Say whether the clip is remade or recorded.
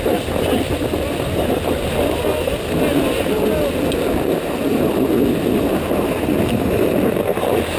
recorded